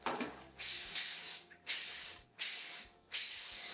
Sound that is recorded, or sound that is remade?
remade